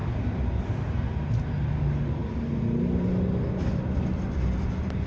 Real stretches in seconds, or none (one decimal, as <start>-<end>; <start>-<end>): 0.0-5.1